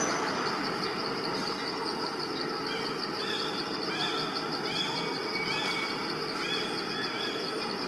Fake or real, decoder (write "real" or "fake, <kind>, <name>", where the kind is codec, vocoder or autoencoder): real